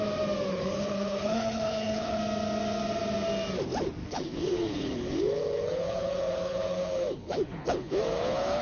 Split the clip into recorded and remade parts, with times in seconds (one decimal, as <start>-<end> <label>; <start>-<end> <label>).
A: 0.0-0.5 recorded; 0.5-2.2 remade; 2.2-4.0 recorded; 4.0-8.6 remade